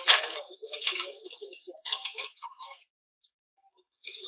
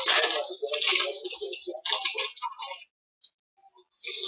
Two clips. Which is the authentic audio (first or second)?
second